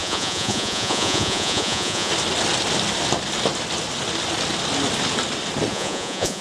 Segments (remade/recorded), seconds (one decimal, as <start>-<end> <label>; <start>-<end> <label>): 0.0-2.1 remade; 2.1-5.7 recorded; 5.7-6.4 remade